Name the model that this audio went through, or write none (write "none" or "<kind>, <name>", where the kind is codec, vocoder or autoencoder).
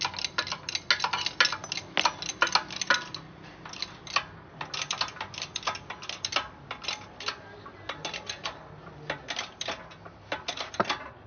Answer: none